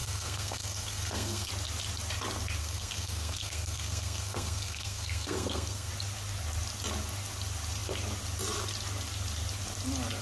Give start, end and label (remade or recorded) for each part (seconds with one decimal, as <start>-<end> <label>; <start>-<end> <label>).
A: 0.0-1.5 remade; 1.5-2.6 recorded; 2.6-5.9 remade; 5.9-10.2 recorded